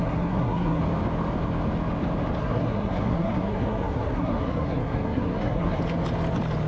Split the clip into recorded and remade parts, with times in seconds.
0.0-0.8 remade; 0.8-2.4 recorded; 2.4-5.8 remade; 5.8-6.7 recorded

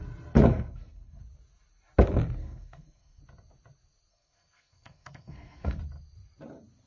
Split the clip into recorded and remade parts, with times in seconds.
0.0-0.5 recorded; 0.5-1.2 remade; 1.2-2.4 recorded; 2.4-3.2 remade; 3.2-4.1 recorded; 4.1-5.8 remade; 5.8-6.9 recorded

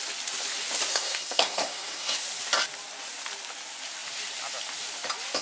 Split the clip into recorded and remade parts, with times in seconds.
0.0-0.9 recorded; 0.9-2.2 remade; 2.2-5.4 recorded